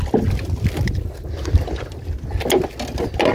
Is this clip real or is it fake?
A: real